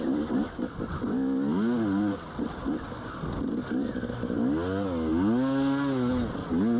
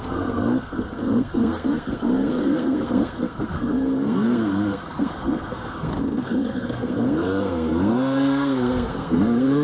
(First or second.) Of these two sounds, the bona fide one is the first